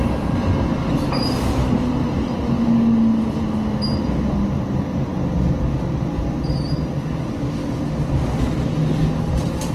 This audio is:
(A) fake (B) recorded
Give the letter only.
B